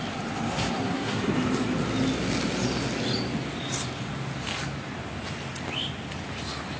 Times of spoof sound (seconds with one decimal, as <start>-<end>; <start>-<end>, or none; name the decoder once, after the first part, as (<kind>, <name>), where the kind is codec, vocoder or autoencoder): 0.5-1.3 (codec, SNAC)